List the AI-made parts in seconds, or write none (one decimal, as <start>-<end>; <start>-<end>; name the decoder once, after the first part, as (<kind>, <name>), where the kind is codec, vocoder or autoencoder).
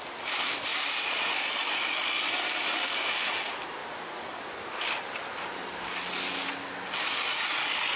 none